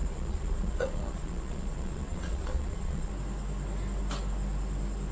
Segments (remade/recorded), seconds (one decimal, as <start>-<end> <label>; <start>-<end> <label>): 0.0-3.1 remade; 3.1-5.1 recorded